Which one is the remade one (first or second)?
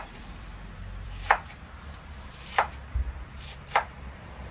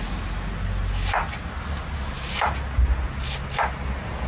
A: first